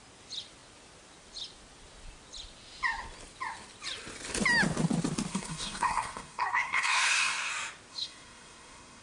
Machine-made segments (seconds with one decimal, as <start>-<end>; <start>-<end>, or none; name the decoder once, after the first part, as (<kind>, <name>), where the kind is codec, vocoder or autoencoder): 5.3-7.5 (codec, SNAC); 7.9-9.0